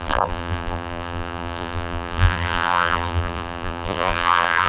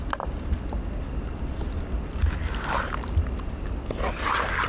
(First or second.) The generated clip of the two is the first